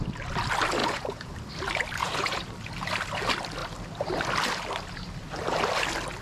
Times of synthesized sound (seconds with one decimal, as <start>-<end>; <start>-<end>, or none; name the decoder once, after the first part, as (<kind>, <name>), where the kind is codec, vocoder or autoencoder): 0.8-1.3 (vocoder, Vocos); 2.0-2.5